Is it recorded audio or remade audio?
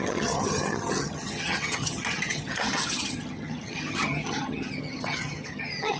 remade